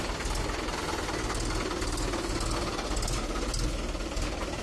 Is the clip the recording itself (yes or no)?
yes